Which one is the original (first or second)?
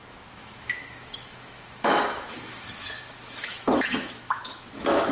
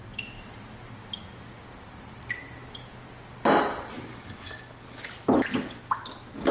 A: second